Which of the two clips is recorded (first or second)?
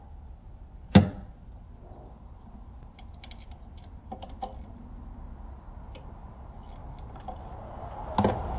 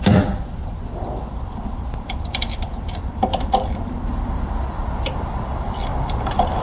first